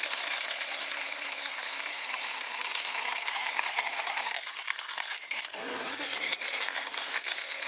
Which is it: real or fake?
fake